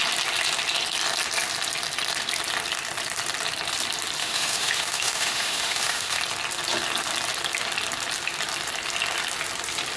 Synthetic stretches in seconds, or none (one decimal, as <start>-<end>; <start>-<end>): 4.2-6.2